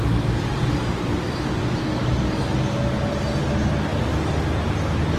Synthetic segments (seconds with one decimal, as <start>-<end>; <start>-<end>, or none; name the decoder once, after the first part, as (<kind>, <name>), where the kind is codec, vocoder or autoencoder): 3.9-4.7 (vocoder, BigVGAN v2)